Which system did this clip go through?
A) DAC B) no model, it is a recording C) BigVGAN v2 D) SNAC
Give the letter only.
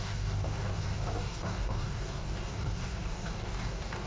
A